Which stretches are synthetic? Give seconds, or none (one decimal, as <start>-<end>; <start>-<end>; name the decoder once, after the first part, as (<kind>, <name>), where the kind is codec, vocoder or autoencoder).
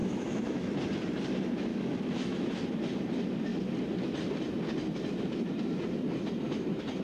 0.0-0.8 (autoencoder, DAC-VAE); 1.7-2.5